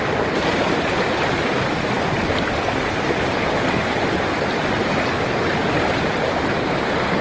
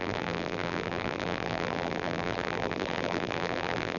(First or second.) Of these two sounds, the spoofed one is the second